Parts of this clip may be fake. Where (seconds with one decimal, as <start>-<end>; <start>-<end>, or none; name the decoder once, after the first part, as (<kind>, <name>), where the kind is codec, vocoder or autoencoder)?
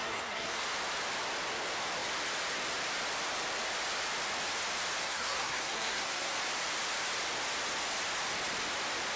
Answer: 0.0-0.6 (codec, SNAC); 5.0-6.4